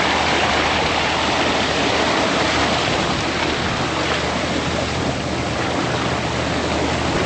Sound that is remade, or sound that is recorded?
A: recorded